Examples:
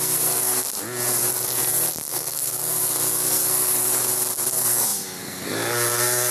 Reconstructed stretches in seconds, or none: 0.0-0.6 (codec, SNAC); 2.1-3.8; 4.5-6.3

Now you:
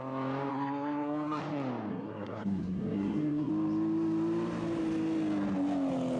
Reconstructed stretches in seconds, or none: 0.5-1.4 (codec, SNAC); 1.9-3.5

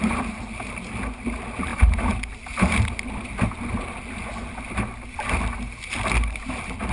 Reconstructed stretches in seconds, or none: none

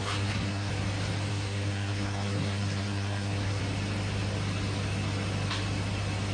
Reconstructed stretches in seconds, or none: 0.0-0.7 (codec, SNAC); 1.3-3.6

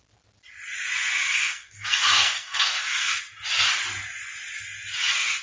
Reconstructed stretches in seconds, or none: 1.3-3.2 (codec, SNAC)

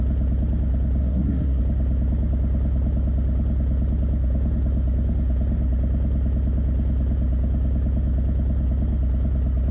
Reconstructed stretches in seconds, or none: 1.0-1.6 (codec, SNAC)